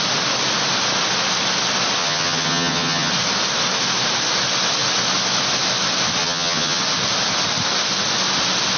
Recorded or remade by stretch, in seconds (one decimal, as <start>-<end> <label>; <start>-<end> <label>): 0.0-2.0 recorded; 2.0-3.1 remade; 3.1-6.2 recorded; 6.2-6.8 remade; 6.8-8.8 recorded

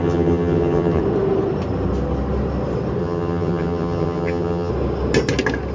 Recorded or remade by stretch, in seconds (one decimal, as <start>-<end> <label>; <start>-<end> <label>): 0.0-1.0 remade; 1.0-3.0 recorded; 3.0-4.7 remade; 4.7-5.7 recorded